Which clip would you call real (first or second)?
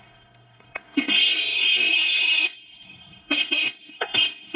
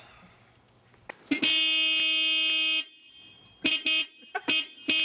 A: second